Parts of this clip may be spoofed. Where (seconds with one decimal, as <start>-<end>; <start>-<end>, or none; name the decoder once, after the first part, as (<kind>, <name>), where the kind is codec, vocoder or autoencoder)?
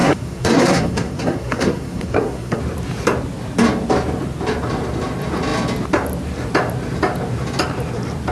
0.0-2.6 (codec, SNAC)